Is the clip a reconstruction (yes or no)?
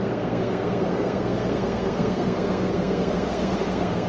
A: yes